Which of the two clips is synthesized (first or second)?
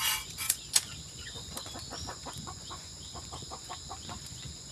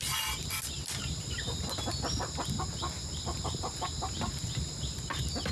first